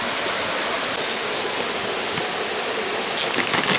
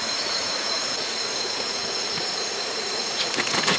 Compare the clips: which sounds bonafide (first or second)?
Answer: first